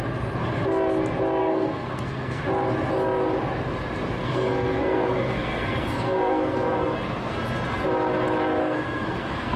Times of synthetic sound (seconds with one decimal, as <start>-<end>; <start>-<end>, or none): 1.4-2.4; 4.2-7.4; 8.6-9.6